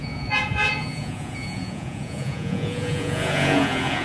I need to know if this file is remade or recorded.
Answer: remade